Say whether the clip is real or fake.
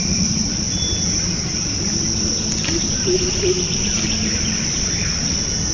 real